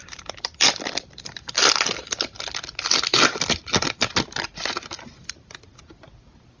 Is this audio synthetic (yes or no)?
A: no